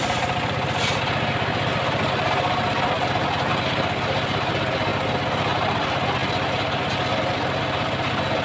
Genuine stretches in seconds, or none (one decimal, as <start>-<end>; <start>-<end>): 0.0-8.4